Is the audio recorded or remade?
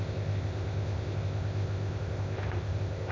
remade